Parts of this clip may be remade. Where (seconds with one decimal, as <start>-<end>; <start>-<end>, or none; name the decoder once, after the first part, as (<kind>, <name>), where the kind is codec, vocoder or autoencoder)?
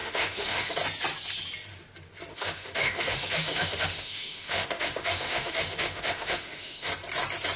0.0-0.7 (autoencoder, DAC-VAE); 2.3-6.9